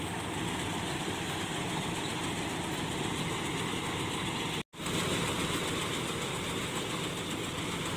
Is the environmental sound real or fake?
real